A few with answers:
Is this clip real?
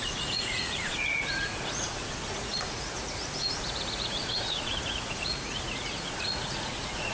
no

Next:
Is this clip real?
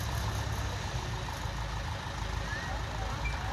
yes